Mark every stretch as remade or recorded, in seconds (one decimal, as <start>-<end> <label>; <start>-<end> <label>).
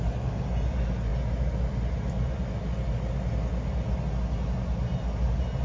0.0-5.6 recorded